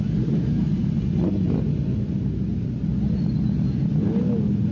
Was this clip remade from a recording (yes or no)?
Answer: no